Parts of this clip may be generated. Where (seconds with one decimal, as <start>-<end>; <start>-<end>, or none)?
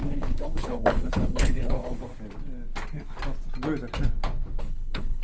0.0-2.1; 4.6-5.2